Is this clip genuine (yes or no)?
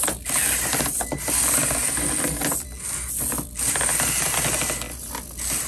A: yes